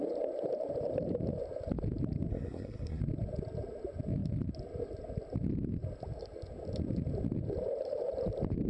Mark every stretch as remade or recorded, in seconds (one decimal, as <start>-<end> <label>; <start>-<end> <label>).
0.0-2.3 recorded; 2.3-3.0 remade; 3.0-8.7 recorded